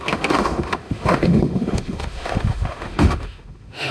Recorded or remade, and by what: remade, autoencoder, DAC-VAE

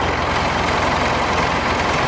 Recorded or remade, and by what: recorded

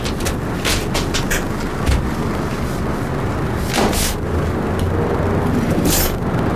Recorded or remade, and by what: recorded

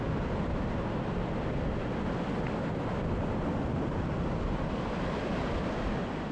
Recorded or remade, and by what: recorded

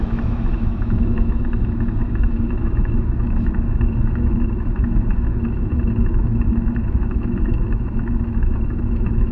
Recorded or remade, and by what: remade, autoencoder, DAC-VAE